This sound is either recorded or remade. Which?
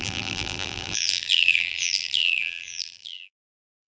remade